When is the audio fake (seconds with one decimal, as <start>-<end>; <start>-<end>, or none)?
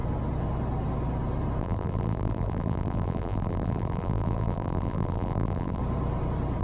1.6-5.8